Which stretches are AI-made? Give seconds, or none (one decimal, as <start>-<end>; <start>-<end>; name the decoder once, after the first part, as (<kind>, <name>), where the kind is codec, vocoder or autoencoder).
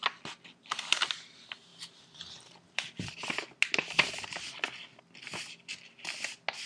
none